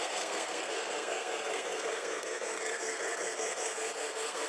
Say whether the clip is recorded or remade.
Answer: remade